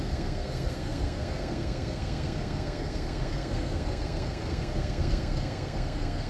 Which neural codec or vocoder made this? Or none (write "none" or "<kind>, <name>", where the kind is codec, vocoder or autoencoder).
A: codec, SNAC